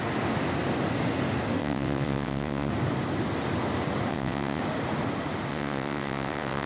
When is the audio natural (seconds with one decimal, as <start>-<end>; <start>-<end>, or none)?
0.0-1.6; 2.7-4.1; 4.6-5.5